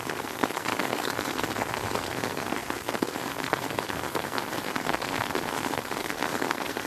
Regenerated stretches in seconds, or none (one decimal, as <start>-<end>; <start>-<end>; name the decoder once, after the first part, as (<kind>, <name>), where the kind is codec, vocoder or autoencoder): 0.0-6.9 (codec, SNAC)